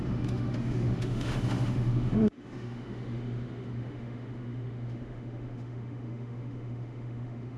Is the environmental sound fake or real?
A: fake